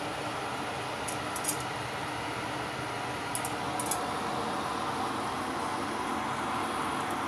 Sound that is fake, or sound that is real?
real